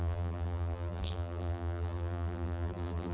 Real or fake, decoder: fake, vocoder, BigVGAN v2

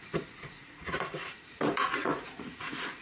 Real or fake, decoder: fake, vocoder, Vocos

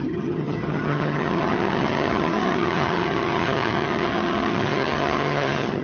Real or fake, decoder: fake, vocoder, HiFi-GAN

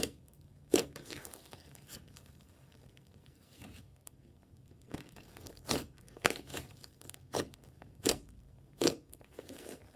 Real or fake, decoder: fake, codec, SNAC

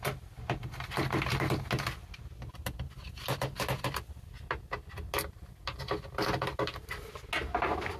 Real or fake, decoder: real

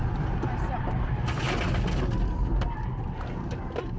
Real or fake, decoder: real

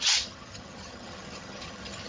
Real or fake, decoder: fake, vocoder, HiFi-GAN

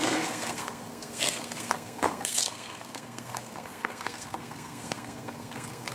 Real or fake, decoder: fake, codec, SNAC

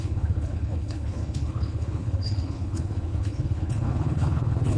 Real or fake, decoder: fake, codec, HILCodec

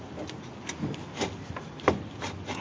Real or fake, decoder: real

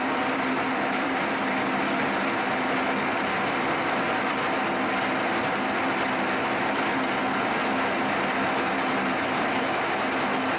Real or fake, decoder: real